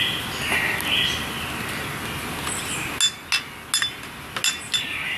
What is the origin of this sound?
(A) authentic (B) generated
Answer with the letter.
A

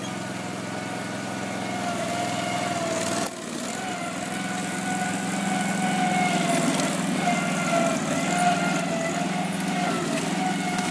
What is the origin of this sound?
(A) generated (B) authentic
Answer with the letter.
B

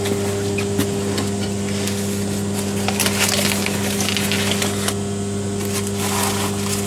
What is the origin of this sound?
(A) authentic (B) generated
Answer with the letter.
A